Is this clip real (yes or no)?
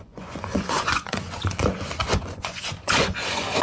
no